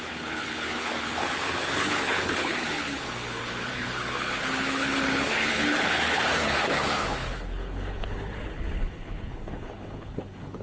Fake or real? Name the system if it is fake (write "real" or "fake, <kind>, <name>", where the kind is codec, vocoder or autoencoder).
fake, codec, HILCodec